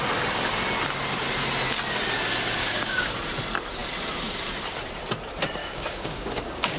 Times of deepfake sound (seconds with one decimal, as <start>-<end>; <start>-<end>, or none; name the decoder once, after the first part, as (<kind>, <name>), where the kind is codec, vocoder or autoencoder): 2.6-3.1 (codec, DAC); 5.6-6.8